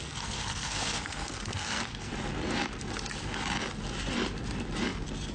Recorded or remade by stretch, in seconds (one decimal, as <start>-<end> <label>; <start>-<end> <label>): 0.0-2.1 remade; 2.1-5.3 recorded